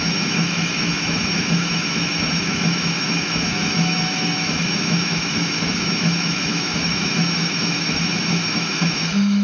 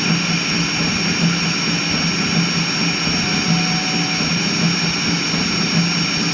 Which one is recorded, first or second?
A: second